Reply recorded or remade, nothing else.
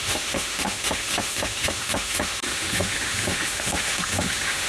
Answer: remade